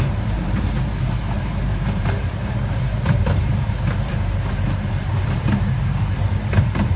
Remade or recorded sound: remade